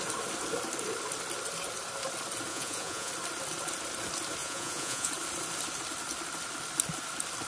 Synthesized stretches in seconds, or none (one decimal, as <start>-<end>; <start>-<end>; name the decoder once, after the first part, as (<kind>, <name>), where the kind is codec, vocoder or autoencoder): 2.5-3.1 (vocoder, Vocos); 4.4-5.1